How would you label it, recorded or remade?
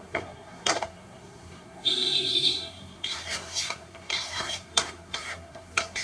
remade